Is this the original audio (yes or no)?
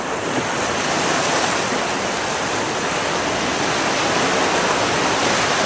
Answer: yes